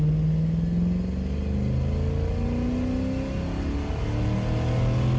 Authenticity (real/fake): real